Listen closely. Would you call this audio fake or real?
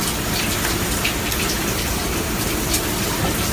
real